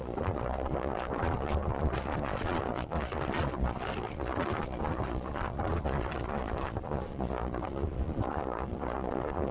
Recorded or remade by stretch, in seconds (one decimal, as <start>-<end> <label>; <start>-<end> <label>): 0.0-9.5 remade

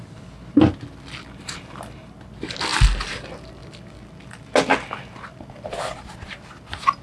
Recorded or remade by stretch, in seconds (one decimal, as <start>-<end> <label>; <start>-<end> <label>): 0.0-7.0 recorded

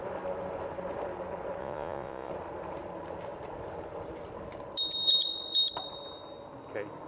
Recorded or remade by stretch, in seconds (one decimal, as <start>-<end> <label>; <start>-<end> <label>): 0.0-1.6 recorded; 1.6-2.3 remade; 2.3-7.1 recorded

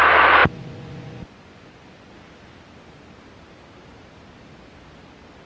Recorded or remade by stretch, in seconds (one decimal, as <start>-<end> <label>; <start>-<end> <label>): 0.0-0.4 recorded; 0.4-2.1 remade; 2.1-5.5 recorded

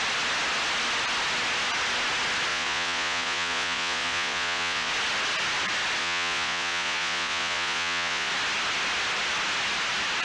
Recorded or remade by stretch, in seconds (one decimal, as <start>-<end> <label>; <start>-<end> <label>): 0.0-2.5 recorded; 2.5-4.9 remade; 4.9-6.0 recorded; 6.0-8.3 remade; 8.3-10.2 recorded

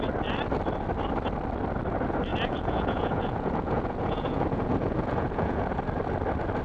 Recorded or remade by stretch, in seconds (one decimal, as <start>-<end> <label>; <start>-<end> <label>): 0.0-2.3 recorded; 2.3-5.8 remade; 5.8-6.6 recorded